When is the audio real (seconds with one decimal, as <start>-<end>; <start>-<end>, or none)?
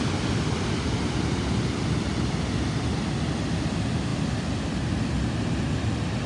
0.0-6.3